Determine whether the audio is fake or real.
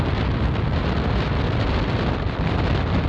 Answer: real